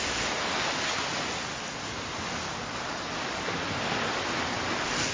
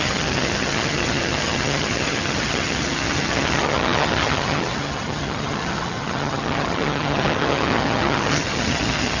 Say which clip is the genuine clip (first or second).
first